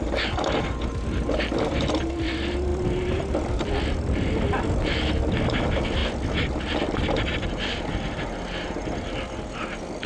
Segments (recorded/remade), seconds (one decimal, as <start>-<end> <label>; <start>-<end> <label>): 0.0-6.0 recorded; 6.0-7.9 remade; 7.9-10.1 recorded